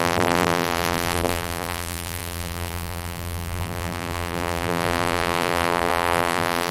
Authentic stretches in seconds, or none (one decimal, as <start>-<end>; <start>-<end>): none